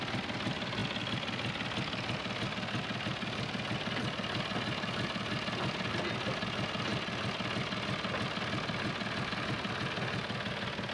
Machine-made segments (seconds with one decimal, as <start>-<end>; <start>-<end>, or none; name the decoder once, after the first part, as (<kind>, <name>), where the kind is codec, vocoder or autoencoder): none